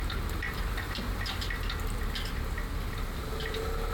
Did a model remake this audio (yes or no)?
no